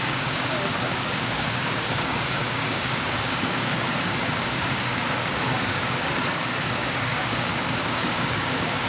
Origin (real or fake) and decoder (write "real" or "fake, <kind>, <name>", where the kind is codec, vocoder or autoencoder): fake, codec, DAC